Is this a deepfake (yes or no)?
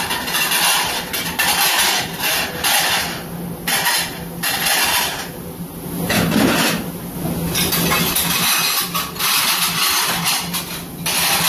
no